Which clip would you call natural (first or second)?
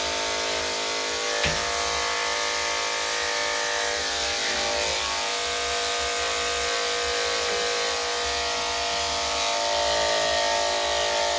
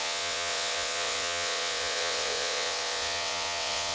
first